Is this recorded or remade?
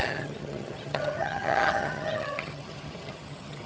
remade